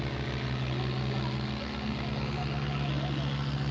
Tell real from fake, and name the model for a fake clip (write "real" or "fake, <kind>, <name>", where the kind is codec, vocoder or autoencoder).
real